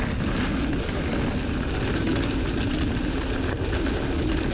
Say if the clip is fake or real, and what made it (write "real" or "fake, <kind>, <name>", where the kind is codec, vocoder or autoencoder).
real